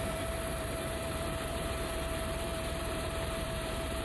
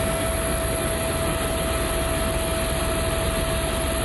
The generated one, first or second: first